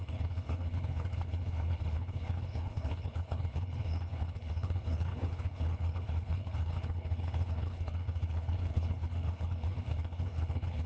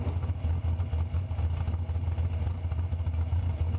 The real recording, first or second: second